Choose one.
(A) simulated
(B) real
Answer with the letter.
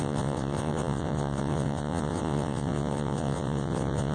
A